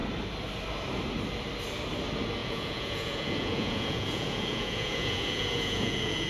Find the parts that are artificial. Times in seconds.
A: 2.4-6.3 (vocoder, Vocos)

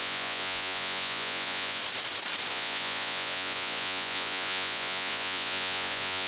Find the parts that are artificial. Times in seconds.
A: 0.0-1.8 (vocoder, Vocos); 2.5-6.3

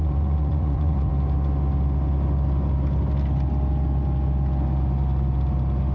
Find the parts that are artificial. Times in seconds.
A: 0.0-1.1 (vocoder, Vocos)

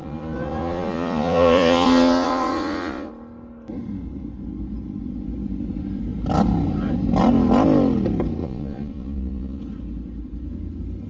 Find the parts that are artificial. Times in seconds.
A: 0.0-3.1 (vocoder, Vocos); 8.4-9.6